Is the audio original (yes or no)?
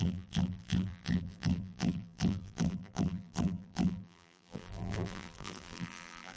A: no